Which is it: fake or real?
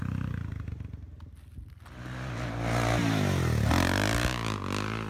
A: real